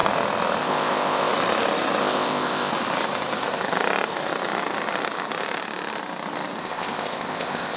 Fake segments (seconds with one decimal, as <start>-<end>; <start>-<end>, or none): 0.6-1.3; 2.0-2.7; 6.6-7.8

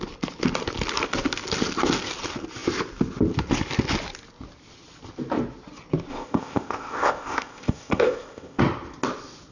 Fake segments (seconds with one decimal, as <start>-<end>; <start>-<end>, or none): 6.1-8.6

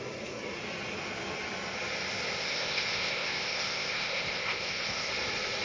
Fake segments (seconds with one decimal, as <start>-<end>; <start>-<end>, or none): 2.4-5.1

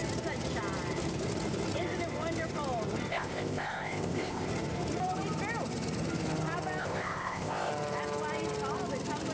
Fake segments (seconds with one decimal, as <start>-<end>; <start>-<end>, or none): 3.1-4.5; 6.8-7.7

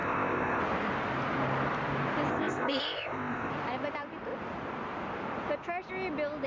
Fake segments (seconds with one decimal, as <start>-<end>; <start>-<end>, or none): 0.0-0.6; 2.3-3.5